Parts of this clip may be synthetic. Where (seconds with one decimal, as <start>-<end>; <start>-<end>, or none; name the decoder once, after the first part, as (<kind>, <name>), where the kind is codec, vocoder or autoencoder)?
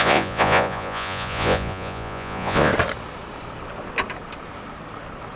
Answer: 0.0-2.7 (vocoder, Vocos)